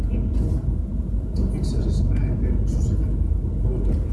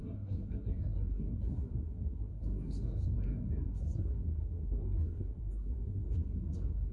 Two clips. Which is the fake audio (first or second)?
second